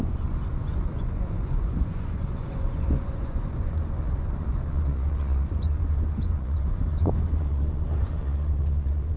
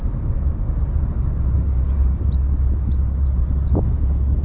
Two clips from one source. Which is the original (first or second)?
second